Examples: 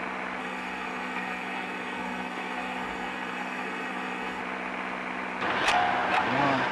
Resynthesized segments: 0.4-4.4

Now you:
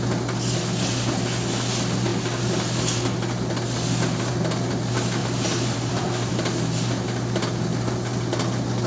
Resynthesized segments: 5.2-6.3

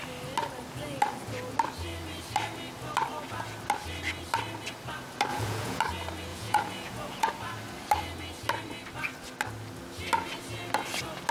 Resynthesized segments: 5.3-5.8; 6.3-7.3

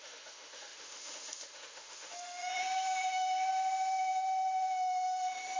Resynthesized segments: 0.0-5.6

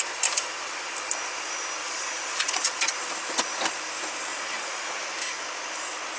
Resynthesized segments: 1.8-2.8; 4.3-5.0

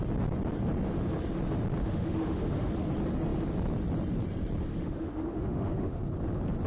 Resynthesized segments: 1.8-2.7; 4.7-6.0

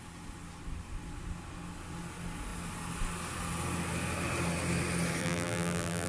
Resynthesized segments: 5.2-6.1